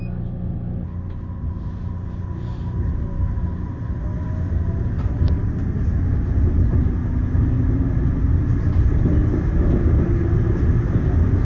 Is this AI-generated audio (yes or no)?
no